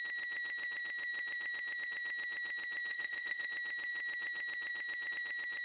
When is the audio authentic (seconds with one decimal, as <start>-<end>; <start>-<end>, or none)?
0.0-2.9; 3.5-5.6